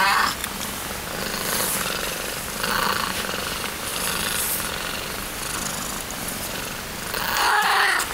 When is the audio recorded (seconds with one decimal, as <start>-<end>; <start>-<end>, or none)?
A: 0.0-0.4; 3.5-3.9; 4.7-8.1